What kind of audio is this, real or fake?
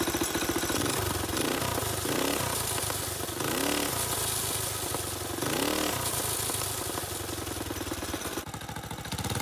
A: real